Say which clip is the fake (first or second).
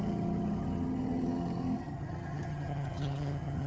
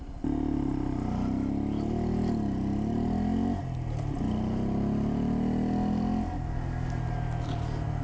first